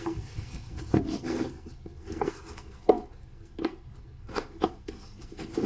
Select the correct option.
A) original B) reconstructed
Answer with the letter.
B